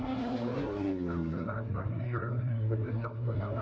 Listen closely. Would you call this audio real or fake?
fake